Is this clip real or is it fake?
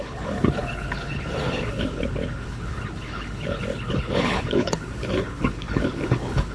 fake